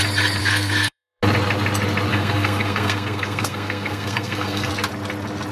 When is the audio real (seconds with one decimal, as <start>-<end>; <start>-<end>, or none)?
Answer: 0.0-0.4; 1.2-2.1; 4.7-5.5